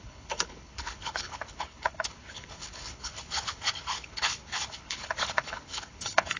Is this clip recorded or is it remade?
remade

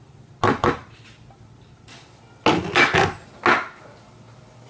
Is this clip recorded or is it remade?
recorded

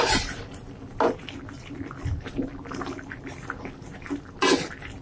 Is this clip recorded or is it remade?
recorded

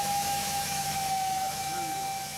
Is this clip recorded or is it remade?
remade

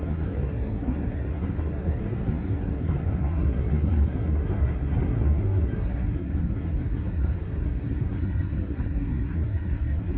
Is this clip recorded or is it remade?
remade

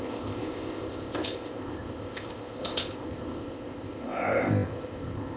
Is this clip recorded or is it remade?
remade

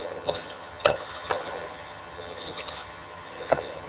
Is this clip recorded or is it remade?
remade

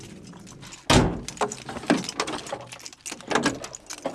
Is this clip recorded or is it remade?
recorded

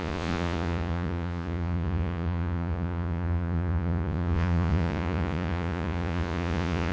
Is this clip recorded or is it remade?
remade